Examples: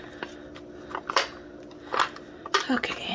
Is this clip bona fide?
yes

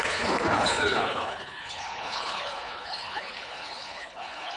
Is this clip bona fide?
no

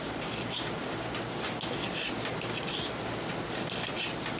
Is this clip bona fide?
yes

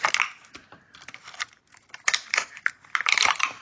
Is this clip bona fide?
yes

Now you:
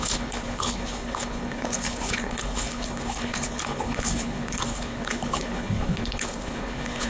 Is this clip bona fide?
no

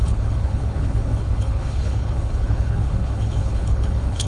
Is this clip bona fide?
no